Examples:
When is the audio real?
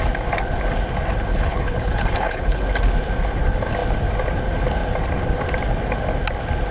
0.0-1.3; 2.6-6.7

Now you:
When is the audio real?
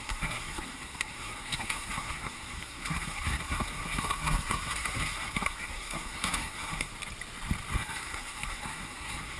6.9-7.7